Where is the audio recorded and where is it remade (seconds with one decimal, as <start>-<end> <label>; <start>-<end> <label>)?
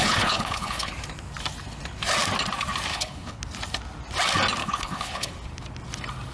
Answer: 0.0-0.9 remade; 0.9-2.9 recorded; 2.9-3.4 remade; 3.4-4.6 recorded; 4.6-5.3 remade; 5.3-6.3 recorded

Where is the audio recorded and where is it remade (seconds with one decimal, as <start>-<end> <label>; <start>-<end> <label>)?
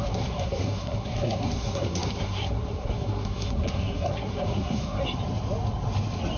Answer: 0.0-5.0 remade; 5.0-6.4 recorded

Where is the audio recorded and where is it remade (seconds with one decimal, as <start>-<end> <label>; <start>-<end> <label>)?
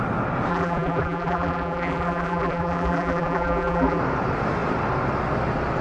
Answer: 0.0-0.5 recorded; 0.5-4.0 remade; 4.0-5.8 recorded